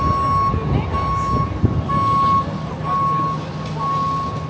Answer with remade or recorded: recorded